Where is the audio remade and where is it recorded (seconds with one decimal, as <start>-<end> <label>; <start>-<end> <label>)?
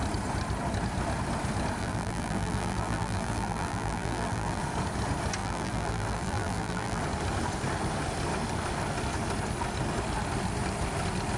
0.0-1.8 recorded; 1.8-4.6 remade; 4.6-5.4 recorded; 5.4-7.0 remade; 7.0-11.4 recorded